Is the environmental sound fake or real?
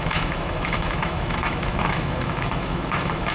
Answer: fake